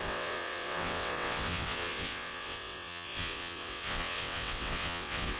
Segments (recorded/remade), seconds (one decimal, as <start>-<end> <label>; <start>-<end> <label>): 0.0-5.4 remade